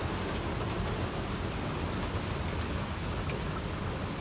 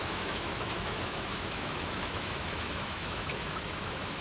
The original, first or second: first